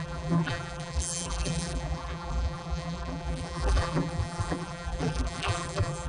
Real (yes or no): no